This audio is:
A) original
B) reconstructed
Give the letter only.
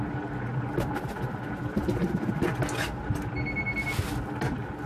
A